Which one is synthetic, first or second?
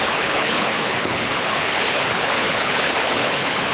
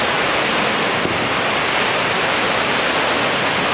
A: first